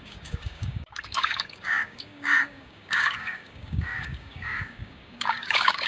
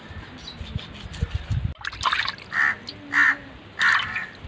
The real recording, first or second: second